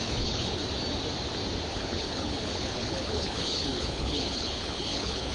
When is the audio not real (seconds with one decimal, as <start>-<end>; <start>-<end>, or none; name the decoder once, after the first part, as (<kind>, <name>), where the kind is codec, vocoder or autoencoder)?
0.0-0.6 (codec, HILCodec); 1.7-5.3